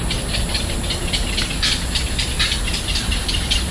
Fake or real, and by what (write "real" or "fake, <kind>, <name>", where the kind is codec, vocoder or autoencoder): real